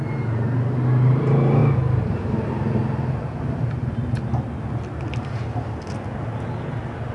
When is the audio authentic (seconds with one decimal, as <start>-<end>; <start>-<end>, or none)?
0.0-7.1